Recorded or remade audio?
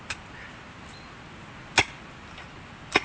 recorded